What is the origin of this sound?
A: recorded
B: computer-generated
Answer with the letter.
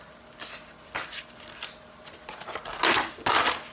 A